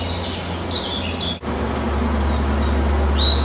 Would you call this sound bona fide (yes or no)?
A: yes